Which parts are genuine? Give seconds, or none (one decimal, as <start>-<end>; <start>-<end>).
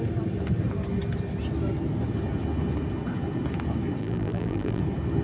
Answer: 0.0-4.0; 4.8-5.2